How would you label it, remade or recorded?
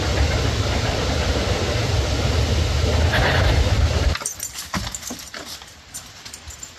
recorded